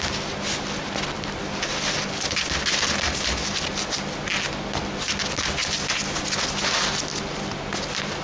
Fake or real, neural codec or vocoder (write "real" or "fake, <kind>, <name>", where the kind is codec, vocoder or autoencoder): real